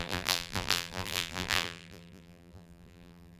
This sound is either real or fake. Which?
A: fake